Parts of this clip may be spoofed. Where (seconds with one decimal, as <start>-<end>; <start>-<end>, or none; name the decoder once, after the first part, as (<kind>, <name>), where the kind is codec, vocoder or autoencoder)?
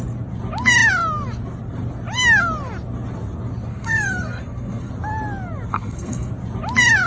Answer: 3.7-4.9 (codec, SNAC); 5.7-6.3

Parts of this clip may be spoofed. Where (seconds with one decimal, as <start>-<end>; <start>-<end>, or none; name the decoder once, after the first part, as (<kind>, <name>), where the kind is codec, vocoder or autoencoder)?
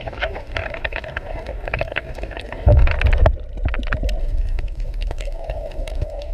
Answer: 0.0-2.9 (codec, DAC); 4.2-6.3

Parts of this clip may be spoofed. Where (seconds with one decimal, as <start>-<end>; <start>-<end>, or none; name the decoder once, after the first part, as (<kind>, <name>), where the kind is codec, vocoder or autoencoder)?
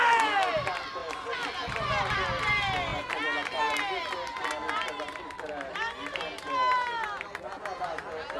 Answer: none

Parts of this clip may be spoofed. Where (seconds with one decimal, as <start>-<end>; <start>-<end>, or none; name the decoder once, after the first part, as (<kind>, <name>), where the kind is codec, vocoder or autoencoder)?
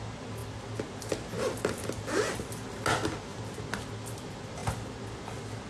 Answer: none